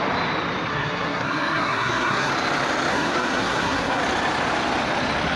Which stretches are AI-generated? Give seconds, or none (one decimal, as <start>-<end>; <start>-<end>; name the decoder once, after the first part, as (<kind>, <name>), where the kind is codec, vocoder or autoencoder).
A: 0.7-2.3 (codec, SNAC); 2.9-4.0